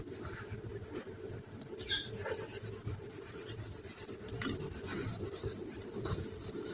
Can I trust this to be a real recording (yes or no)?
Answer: no